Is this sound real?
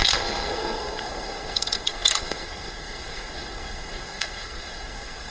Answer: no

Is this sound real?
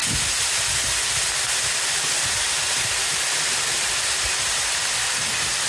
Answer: yes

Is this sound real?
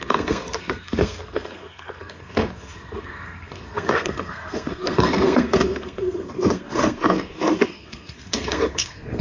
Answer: no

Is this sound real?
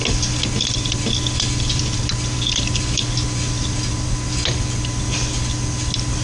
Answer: yes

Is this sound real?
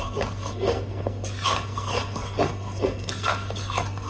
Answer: no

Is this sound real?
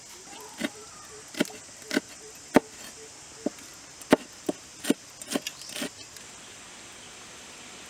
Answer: yes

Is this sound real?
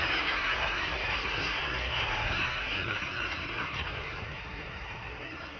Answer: no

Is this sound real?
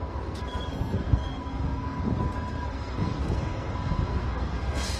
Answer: no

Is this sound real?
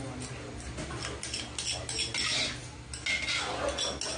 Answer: yes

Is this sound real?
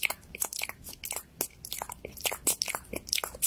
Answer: yes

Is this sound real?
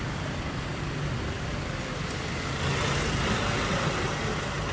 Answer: yes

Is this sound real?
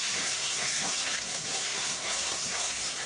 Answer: no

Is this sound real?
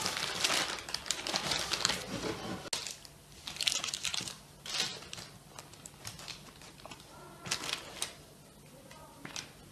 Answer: yes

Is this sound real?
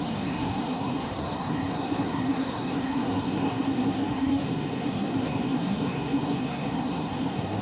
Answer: no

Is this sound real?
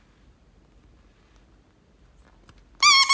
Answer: yes